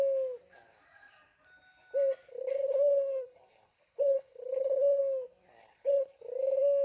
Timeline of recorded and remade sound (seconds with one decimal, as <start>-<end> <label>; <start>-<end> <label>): 0.0-2.3 recorded; 2.3-5.0 remade; 5.0-5.6 recorded; 5.6-6.2 remade; 6.2-6.8 recorded